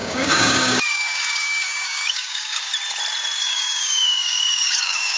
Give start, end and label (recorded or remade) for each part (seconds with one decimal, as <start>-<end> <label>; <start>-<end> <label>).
0.0-2.7 remade; 2.7-3.4 recorded; 3.4-5.2 remade